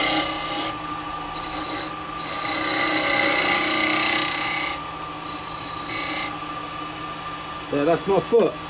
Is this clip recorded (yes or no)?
yes